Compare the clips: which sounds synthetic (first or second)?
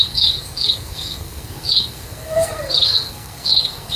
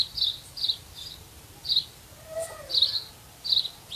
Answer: first